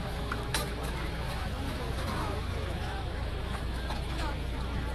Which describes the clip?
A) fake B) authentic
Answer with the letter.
A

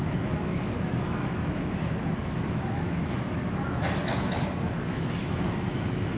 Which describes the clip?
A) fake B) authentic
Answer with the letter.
A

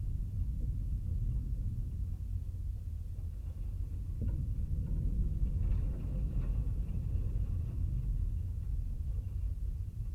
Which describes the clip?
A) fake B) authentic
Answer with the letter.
B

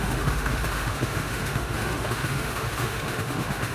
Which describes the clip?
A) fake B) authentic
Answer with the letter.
A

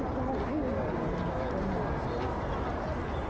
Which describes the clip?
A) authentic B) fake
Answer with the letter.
A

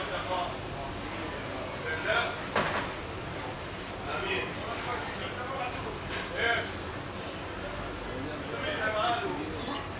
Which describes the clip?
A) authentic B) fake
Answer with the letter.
A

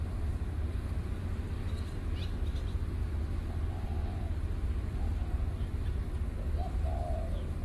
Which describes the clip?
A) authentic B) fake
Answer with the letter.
A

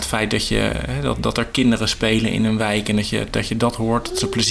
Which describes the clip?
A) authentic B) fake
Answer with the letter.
A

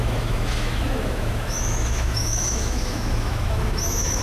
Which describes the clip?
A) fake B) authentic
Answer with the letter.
A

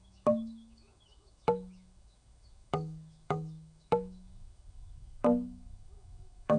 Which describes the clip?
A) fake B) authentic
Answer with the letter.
A